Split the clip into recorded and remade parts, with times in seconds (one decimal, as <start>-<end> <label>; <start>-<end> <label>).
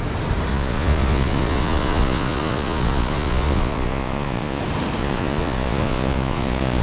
0.0-0.5 recorded; 0.5-4.6 remade; 4.6-5.0 recorded; 5.0-6.8 remade